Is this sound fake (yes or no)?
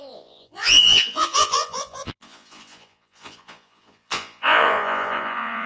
yes